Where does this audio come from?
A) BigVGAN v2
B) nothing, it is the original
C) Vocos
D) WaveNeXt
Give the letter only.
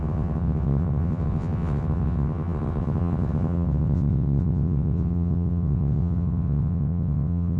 D